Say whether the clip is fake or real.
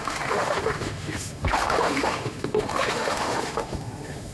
fake